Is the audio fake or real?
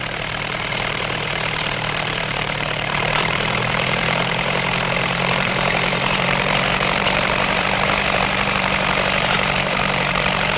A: fake